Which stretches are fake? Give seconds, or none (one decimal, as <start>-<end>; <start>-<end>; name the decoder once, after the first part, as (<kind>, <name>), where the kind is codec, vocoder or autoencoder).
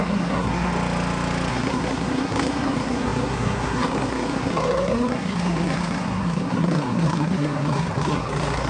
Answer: 0.0-0.7 (codec, SNAC); 1.5-8.7